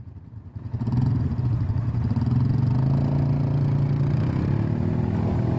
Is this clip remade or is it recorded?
recorded